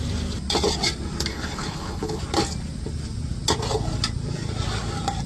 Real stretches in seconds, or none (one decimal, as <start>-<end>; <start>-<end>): 0.0-1.3; 2.2-5.3